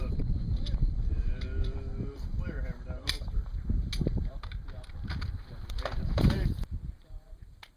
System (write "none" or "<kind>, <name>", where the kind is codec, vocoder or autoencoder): vocoder, BigVGAN v2